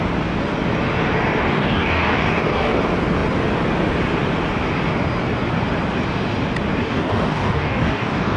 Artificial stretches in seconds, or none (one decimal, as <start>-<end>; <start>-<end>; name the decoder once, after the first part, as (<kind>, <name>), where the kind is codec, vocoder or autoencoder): 1.5-2.8 (codec, DAC); 6.8-8.4